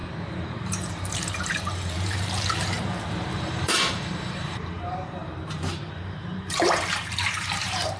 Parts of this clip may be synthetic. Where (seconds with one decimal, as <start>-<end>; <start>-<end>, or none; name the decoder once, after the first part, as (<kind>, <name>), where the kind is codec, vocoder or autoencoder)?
0.0-8.0 (vocoder, BigVGAN v2)